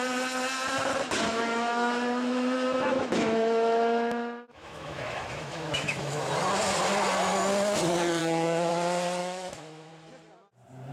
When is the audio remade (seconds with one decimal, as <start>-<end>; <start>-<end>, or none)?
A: 1.3-6.2; 8.2-8.7; 9.2-9.9